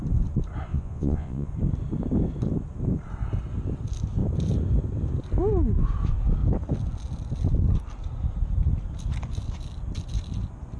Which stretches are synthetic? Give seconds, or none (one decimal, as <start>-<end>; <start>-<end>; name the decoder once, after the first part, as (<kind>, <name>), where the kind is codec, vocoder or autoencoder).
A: 0.7-1.5 (vocoder, Vocos)